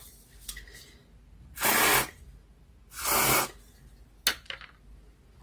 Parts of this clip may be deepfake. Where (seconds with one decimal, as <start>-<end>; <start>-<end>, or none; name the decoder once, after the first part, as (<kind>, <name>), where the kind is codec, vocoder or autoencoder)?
none